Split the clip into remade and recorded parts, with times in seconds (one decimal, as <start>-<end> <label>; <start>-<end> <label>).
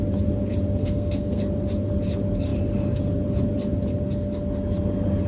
0.0-0.8 recorded; 0.8-1.4 remade; 1.4-5.3 recorded